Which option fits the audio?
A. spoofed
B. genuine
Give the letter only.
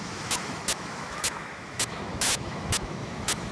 A